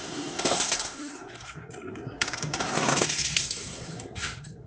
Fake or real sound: fake